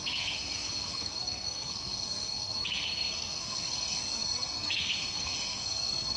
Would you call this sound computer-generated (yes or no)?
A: yes